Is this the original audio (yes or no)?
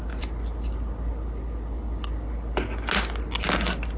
yes